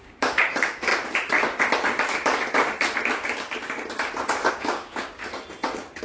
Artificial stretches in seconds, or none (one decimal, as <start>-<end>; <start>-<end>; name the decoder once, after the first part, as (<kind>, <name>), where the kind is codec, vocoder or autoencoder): 0.0-0.9 (codec, DAC); 4.5-5.2

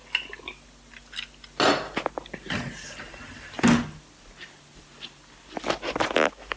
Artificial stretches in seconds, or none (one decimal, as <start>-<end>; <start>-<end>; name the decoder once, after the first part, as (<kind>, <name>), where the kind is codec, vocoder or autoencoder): none